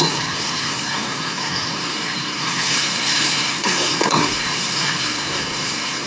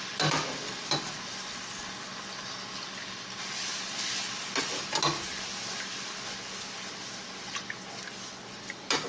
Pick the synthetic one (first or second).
first